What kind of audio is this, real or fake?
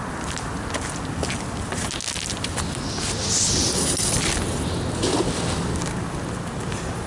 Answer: real